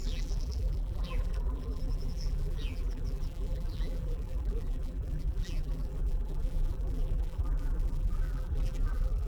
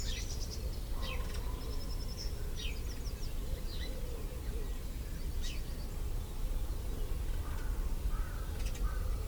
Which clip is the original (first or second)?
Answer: second